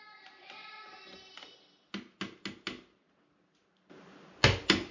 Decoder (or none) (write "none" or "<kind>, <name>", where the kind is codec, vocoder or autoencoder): none